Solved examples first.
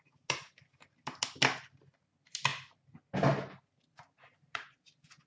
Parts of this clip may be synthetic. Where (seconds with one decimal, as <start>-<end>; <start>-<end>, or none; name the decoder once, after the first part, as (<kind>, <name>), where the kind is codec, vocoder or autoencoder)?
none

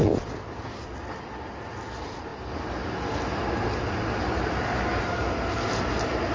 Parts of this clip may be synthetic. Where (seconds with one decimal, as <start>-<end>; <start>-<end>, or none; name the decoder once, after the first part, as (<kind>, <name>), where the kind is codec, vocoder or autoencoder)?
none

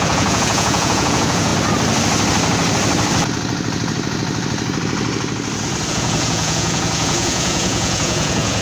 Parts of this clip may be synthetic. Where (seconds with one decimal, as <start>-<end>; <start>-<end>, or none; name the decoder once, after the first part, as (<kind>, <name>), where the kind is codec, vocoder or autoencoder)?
0.0-1.5 (vocoder, Vocos); 5.9-8.6

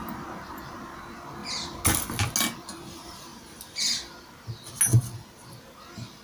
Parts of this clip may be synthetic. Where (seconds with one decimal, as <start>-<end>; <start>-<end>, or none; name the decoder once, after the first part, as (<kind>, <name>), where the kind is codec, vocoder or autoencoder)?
none